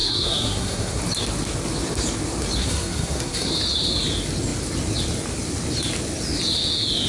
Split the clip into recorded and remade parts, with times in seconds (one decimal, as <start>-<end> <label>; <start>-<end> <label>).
0.0-1.0 remade; 1.0-2.6 recorded; 2.6-3.5 remade; 3.5-7.1 recorded